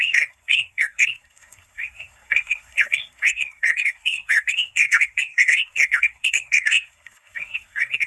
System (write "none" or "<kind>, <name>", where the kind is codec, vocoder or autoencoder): codec, SNAC